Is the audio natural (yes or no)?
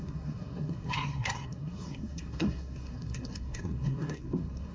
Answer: no